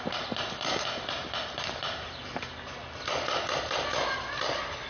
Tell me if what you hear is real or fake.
real